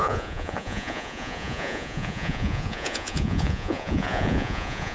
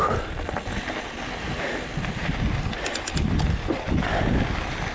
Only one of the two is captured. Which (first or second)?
second